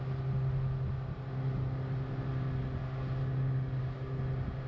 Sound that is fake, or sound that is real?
real